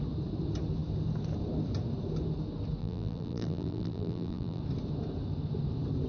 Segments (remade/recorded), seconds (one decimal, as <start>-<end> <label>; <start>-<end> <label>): 0.0-2.8 recorded; 2.8-4.6 remade; 4.6-6.1 recorded